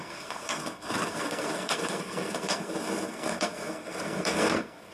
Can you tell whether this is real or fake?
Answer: fake